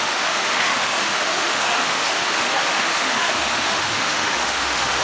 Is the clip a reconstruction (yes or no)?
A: yes